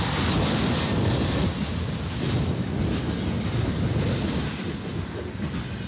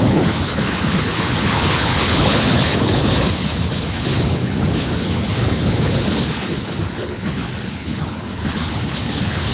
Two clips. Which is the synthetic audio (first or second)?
second